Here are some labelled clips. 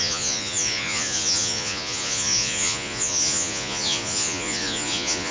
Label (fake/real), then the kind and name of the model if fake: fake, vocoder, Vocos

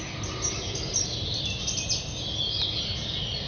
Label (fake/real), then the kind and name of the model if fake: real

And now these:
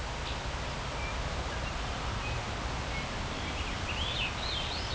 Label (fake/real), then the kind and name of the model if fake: real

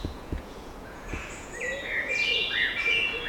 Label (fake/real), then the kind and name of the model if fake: fake, vocoder, Vocos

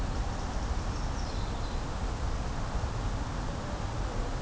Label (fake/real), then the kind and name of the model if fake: real